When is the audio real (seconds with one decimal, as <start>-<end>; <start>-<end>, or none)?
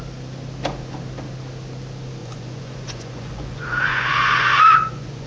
0.0-2.2